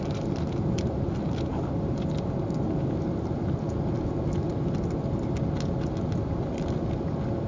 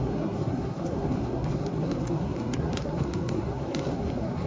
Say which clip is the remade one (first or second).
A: second